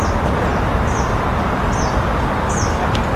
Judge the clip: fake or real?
fake